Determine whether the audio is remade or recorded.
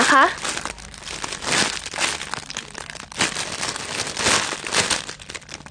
recorded